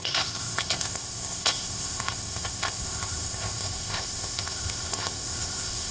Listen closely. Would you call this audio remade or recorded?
remade